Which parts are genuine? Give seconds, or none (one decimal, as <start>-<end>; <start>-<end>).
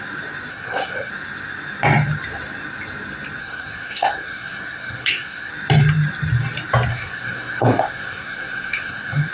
0.0-0.5; 1.1-3.4; 5.5-6.9